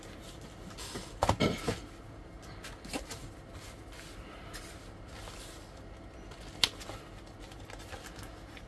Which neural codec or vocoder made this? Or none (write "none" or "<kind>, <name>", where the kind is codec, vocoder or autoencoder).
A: none